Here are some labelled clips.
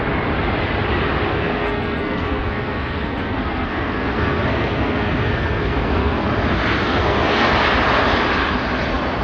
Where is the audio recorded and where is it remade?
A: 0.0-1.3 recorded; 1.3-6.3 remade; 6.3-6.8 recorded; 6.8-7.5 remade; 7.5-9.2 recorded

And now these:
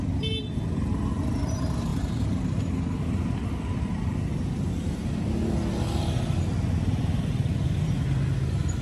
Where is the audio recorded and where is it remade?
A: 0.0-1.9 recorded; 1.9-2.6 remade; 2.6-8.8 recorded

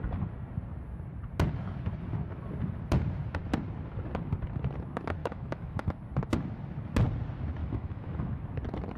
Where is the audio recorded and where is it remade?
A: 0.0-5.2 recorded; 5.2-5.9 remade; 5.9-7.6 recorded; 7.6-8.4 remade; 8.4-9.0 recorded

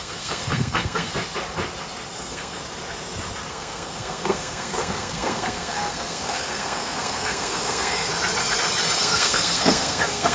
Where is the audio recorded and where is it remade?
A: 0.0-1.1 remade; 1.1-2.2 recorded; 2.2-2.6 remade; 2.6-3.5 recorded; 3.5-8.1 remade; 8.1-9.0 recorded; 9.0-10.3 remade

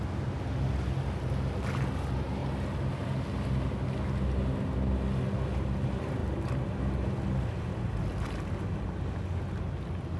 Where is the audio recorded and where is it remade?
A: 0.0-6.2 recorded; 6.2-6.8 remade; 6.8-10.2 recorded

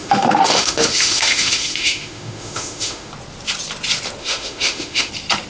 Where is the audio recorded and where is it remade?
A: 0.0-3.1 remade; 3.1-4.2 recorded; 4.2-5.1 remade; 5.1-5.5 recorded